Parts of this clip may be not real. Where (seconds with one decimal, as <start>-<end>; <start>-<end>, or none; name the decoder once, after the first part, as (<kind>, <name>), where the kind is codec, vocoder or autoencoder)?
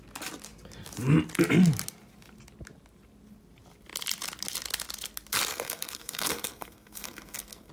5.5-7.7 (codec, SNAC)